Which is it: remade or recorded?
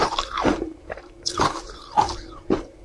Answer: remade